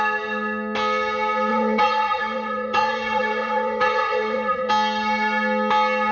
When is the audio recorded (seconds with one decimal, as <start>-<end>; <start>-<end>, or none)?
0.0-1.5; 4.7-6.1